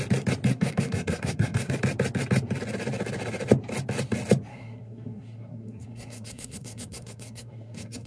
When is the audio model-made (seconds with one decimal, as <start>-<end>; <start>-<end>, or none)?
0.5-1.7; 4.5-8.1